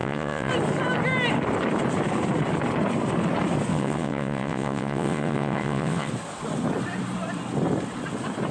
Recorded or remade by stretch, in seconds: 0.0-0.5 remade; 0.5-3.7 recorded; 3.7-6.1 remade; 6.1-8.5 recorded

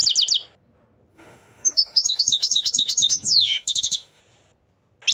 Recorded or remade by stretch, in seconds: 0.0-1.1 recorded; 1.1-4.2 remade; 4.2-5.1 recorded

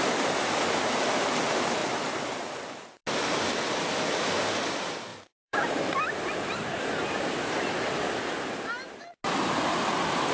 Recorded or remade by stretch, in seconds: 0.0-1.8 recorded; 1.8-2.8 remade; 2.8-5.1 recorded; 5.1-6.8 remade; 6.8-10.3 recorded

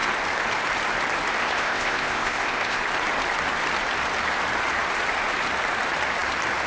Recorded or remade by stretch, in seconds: 0.0-1.4 recorded; 1.4-2.8 remade; 2.8-6.7 recorded

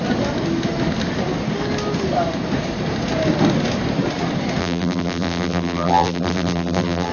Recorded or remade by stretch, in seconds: 0.0-4.6 recorded; 4.6-7.1 remade